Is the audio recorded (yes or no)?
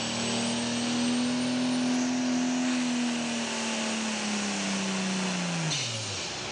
yes